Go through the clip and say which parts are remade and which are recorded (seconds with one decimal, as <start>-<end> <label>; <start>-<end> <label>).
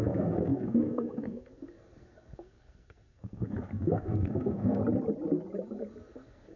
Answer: 0.0-4.8 remade; 4.8-6.0 recorded; 6.0-6.6 remade